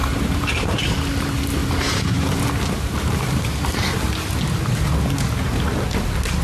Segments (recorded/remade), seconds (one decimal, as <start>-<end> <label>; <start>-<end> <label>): 0.0-0.8 remade; 0.8-1.6 recorded; 1.6-2.5 remade; 2.5-6.4 recorded